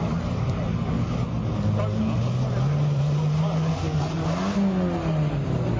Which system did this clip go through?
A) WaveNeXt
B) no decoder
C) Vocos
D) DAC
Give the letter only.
B